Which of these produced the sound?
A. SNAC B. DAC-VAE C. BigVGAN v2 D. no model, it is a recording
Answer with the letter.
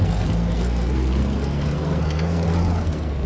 A